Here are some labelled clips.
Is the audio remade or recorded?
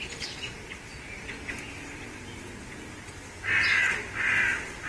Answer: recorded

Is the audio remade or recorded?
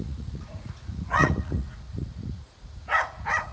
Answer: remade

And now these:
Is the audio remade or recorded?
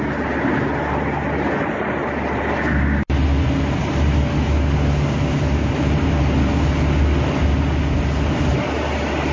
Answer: recorded